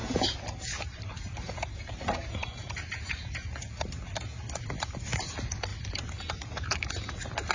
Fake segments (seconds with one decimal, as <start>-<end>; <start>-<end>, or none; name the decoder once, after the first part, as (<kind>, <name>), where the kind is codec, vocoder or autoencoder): 0.0-4.3 (vocoder, BigVGAN v2); 5.7-7.5